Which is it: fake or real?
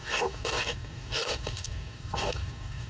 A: fake